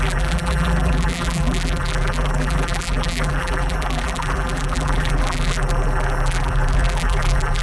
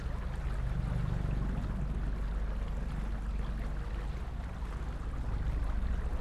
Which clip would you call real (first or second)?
second